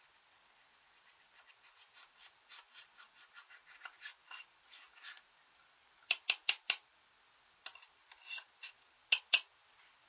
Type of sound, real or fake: real